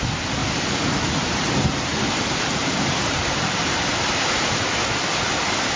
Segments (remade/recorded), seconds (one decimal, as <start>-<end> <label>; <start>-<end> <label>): 0.0-0.4 recorded; 0.4-3.9 remade; 3.9-5.8 recorded